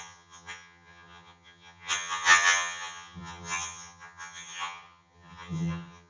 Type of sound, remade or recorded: remade